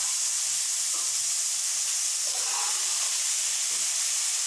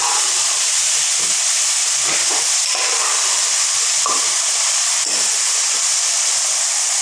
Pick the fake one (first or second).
second